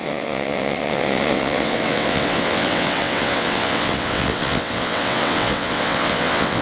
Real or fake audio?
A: fake